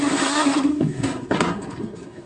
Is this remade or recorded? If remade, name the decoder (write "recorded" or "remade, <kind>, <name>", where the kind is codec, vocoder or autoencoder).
remade, codec, SNAC